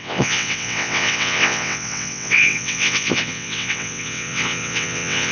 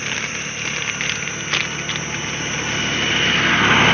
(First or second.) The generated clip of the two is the first